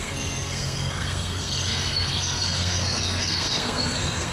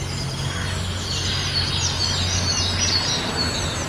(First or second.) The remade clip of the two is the first